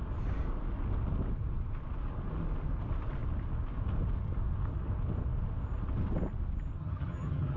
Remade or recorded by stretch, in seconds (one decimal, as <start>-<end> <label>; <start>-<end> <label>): 0.0-6.8 recorded; 6.8-7.6 remade